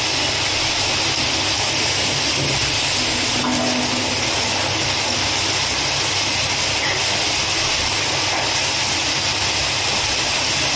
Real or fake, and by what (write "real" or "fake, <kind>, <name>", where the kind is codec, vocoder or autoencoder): real